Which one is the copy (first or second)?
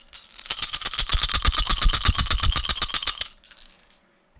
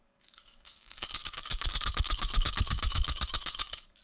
second